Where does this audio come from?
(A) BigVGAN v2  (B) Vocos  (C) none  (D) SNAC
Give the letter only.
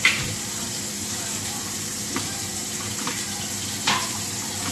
A